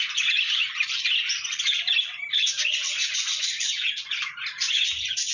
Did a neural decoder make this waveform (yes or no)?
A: yes